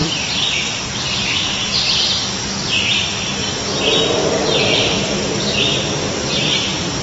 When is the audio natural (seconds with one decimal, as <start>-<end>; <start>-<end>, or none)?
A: 1.0-3.4; 6.3-7.0